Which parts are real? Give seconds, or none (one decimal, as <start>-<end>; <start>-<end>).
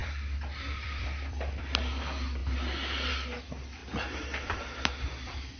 1.6-3.8